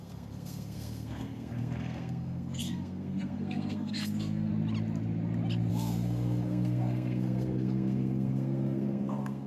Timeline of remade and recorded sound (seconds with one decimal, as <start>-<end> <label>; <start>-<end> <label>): 0.0-4.5 remade; 4.5-5.7 recorded; 5.7-9.5 remade